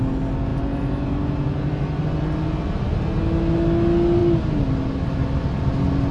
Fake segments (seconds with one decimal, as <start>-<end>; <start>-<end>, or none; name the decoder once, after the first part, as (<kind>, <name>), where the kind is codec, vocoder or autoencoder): none